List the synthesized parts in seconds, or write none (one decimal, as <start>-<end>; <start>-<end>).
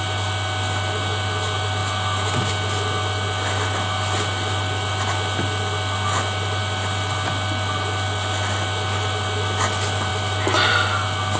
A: none